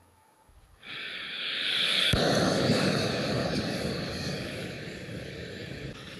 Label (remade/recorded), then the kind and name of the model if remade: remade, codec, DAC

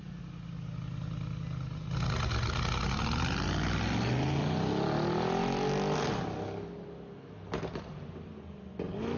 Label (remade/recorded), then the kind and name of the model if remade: recorded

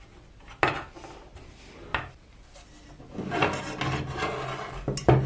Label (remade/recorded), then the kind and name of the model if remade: recorded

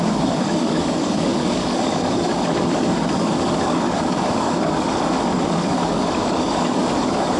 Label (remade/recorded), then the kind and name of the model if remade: remade, codec, DAC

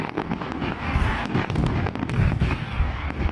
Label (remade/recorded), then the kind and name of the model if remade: remade, codec, DAC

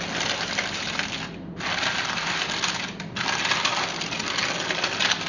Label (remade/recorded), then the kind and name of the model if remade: recorded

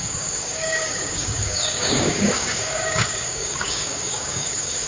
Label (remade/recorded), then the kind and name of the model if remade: remade, codec, DAC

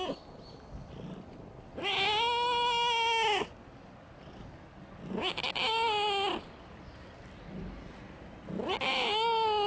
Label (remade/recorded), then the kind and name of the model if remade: recorded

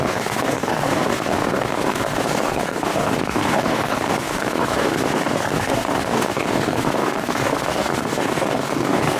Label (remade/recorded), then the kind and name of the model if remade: remade, codec, DAC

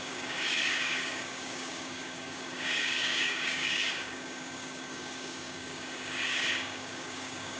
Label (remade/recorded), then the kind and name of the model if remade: remade, codec, DAC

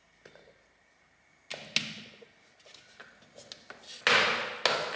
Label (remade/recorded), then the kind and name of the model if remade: recorded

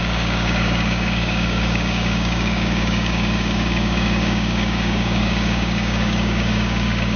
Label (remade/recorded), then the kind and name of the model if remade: remade, codec, DAC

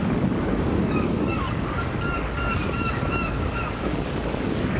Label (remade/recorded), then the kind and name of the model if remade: remade, codec, DAC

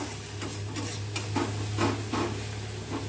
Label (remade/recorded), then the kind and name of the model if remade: recorded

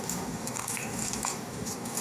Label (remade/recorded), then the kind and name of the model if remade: remade, codec, DAC